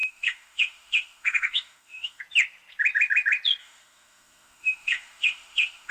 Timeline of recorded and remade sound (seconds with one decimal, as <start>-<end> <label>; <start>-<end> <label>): 0.0-2.2 remade; 2.2-3.6 recorded; 3.6-5.9 remade